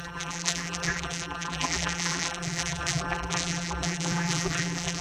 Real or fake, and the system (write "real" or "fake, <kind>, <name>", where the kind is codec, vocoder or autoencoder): fake, vocoder, BigVGAN v2